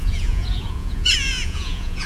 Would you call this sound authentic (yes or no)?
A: no